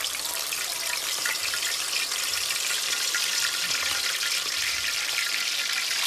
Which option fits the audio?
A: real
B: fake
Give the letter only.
A